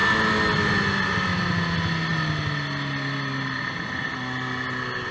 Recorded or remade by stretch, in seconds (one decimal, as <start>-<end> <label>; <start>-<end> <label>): 0.0-5.1 recorded